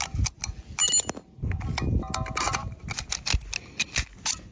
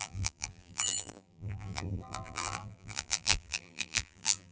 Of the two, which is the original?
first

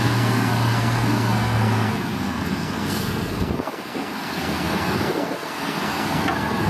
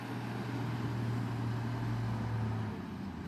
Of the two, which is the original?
second